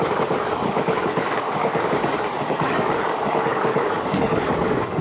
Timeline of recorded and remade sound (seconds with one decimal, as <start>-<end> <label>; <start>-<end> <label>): 0.0-5.0 remade